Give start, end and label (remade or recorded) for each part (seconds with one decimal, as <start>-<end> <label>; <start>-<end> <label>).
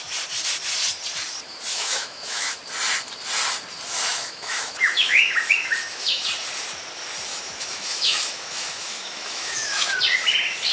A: 0.0-1.7 recorded; 1.7-2.6 remade; 2.6-4.1 recorded; 4.1-6.2 remade; 6.2-7.3 recorded; 7.3-9.9 remade; 9.9-10.7 recorded